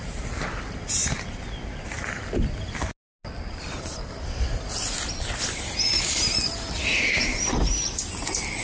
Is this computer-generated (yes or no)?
no